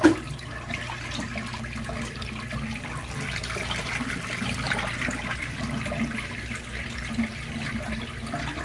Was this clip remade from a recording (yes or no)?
no